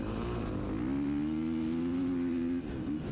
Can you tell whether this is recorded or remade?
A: recorded